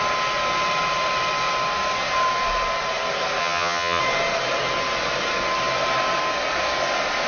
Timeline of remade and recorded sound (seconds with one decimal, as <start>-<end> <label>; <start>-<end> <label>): 0.0-3.4 recorded; 3.4-4.0 remade; 4.0-7.3 recorded